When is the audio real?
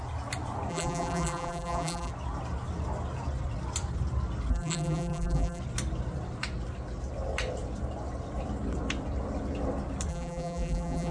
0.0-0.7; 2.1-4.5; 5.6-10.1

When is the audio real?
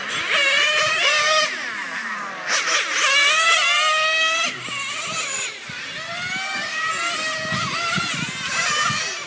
0.0-9.3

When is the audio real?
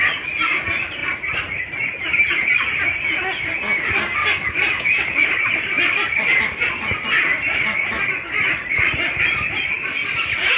0.0-1.0; 1.6-4.2; 6.7-7.3; 9.5-10.6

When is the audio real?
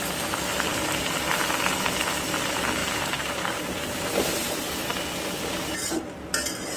0.0-2.8; 4.5-6.8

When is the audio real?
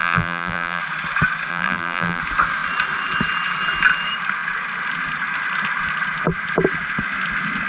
0.8-1.5; 2.2-7.7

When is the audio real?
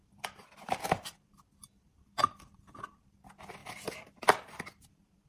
3.2-3.6